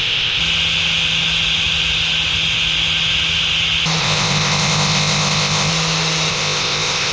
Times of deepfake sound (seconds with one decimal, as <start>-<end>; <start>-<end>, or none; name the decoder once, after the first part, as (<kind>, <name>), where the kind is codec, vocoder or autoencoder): 0.0-0.4 (codec, ZipCodec); 4.0-5.7; 6.3-7.1